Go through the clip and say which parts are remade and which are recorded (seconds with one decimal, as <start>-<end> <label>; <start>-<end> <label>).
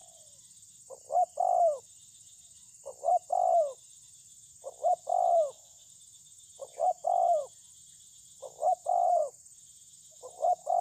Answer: 0.0-4.1 recorded; 4.1-5.1 remade; 5.1-5.9 recorded; 5.9-10.8 remade